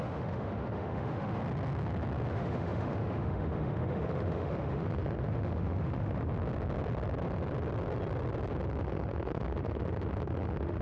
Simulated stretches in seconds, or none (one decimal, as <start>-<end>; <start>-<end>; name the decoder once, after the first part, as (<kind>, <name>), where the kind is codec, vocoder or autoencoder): 0.0-1.4 (autoencoder, DAC-VAE); 2.3-6.3; 8.8-10.8